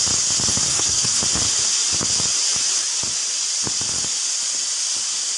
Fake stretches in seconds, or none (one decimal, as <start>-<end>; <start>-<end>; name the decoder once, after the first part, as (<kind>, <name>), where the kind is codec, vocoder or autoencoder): 0.7-1.2 (codec, SNAC)